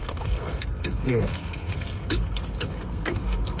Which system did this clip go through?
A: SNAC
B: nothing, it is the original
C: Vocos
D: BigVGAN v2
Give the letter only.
A